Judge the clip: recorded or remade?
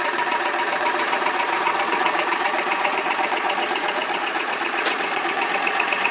remade